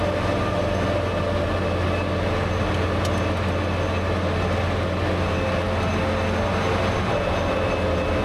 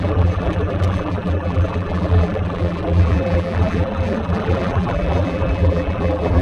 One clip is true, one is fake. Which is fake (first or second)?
second